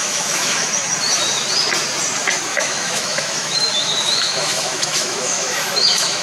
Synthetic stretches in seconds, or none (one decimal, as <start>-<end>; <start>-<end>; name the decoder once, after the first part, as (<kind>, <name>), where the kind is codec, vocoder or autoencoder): 0.0-0.7 (autoencoder, DAC-VAE); 2.5-6.2